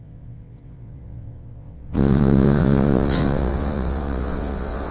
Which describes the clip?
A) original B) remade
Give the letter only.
B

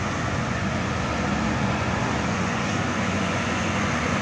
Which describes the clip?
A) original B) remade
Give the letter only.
B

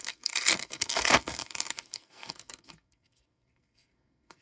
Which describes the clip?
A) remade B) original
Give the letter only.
A